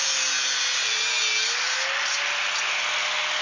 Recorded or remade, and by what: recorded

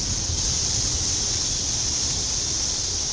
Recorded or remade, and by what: recorded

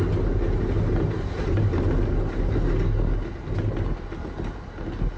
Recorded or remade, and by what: recorded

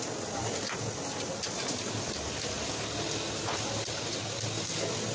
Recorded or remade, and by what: recorded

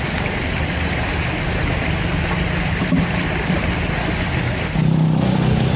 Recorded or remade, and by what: remade, vocoder, BigVGAN v2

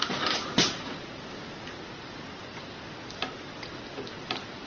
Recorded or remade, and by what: recorded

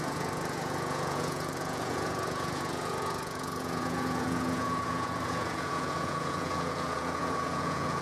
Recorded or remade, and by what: remade, vocoder, Vocos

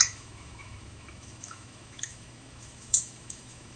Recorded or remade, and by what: remade, autoencoder, DAC-VAE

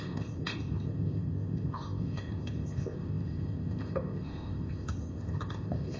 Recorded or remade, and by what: remade, codec, ZipCodec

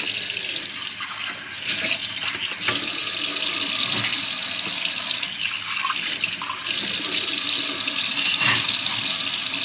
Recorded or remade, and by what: recorded